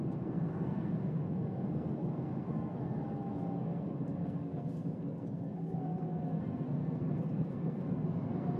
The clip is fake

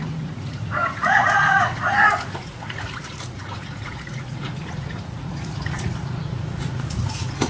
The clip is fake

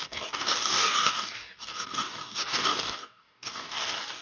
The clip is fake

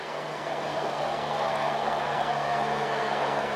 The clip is fake